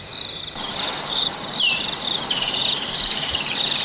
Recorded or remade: remade